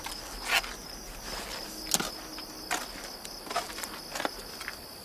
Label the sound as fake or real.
real